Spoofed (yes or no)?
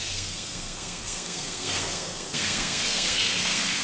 yes